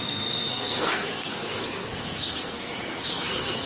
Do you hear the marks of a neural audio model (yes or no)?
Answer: yes